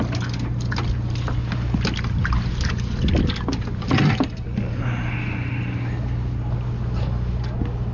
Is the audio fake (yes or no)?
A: no